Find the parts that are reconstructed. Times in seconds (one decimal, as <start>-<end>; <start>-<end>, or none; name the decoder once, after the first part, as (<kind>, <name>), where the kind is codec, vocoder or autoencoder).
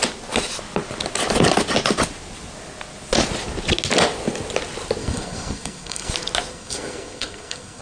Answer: 5.0-6.1 (codec, SNAC); 6.5-7.8